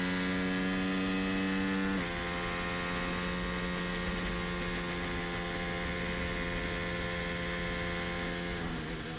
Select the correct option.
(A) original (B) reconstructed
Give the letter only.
A